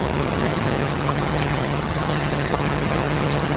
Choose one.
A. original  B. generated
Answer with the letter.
B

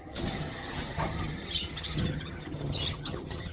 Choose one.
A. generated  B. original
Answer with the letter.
A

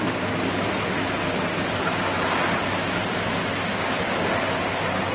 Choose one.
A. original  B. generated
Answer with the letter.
A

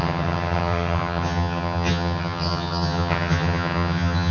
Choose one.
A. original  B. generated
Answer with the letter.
B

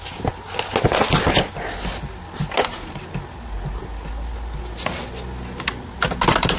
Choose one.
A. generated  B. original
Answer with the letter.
B